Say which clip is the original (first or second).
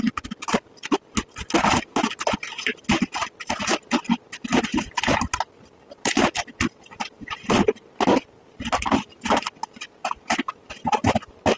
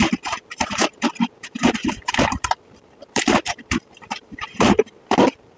first